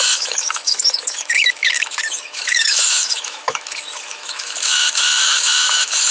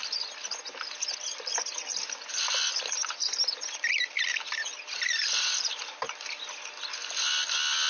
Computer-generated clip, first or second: first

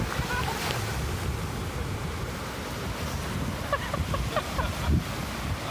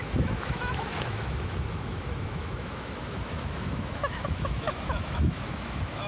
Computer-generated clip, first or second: second